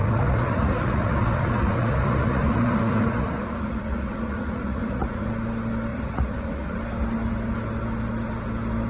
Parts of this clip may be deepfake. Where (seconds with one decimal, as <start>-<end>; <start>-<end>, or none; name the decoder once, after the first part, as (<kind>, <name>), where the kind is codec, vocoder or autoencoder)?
0.0-5.3 (vocoder, Vocos); 5.9-6.8

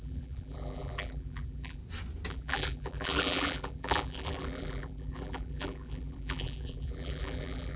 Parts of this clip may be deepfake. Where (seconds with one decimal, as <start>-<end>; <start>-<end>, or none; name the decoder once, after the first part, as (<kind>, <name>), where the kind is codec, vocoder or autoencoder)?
0.0-1.8 (vocoder, BigVGAN v2); 2.3-7.8

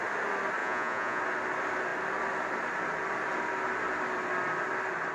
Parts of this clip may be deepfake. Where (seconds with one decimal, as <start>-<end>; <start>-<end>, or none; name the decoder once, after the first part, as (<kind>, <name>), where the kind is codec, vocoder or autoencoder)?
0.6-1.2 (vocoder, Vocos)

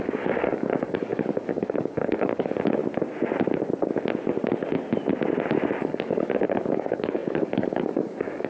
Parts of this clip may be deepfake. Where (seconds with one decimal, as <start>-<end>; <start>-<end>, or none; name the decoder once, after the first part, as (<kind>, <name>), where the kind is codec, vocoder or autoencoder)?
0.0-2.8 (codec, DAC); 5.8-8.5

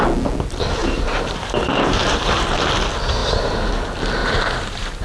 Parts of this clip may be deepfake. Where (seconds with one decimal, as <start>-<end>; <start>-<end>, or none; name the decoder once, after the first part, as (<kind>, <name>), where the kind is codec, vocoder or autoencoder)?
0.8-2.4 (vocoder, BigVGAN v2); 3.2-3.7; 4.2-5.0

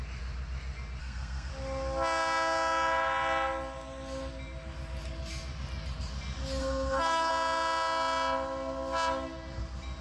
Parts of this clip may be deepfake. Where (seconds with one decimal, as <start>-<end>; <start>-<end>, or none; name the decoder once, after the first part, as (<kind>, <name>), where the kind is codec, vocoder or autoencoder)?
1.0-1.5 (codec, SNAC); 6.6-7.3

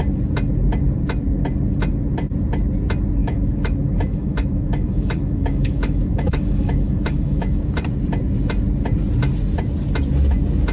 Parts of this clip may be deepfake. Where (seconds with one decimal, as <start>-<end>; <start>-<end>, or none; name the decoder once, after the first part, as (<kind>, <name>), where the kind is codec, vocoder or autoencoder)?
3.2-7.6 (autoencoder, DAC-VAE)

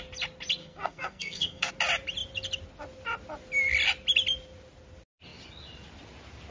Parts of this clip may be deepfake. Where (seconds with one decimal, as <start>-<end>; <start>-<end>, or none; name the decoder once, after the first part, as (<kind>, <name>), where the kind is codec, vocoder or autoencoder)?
0.6-1.7 (codec, SNAC)